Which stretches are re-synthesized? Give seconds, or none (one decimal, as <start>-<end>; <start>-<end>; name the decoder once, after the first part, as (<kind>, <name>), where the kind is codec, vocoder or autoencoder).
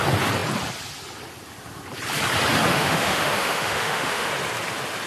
2.7-4.3 (autoencoder, DAC-VAE)